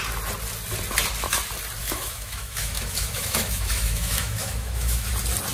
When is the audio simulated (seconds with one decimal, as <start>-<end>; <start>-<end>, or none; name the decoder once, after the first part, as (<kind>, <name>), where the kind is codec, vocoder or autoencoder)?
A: 1.8-5.1 (autoencoder, DAC-VAE)